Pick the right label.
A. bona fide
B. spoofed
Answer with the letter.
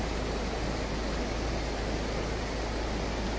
A